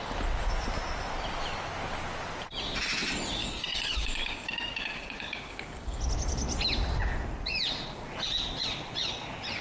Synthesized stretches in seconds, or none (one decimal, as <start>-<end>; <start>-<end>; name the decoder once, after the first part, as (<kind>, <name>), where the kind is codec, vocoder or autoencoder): 3.4-6.0 (codec, DAC)